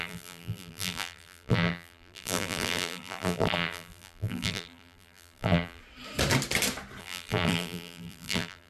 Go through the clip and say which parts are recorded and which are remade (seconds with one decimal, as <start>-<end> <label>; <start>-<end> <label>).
0.0-5.8 remade; 5.8-7.0 recorded; 7.0-8.7 remade